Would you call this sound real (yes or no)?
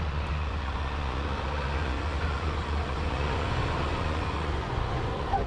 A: no